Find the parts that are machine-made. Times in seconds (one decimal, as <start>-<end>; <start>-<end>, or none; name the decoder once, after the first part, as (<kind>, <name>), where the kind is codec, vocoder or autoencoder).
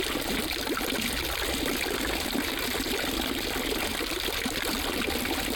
none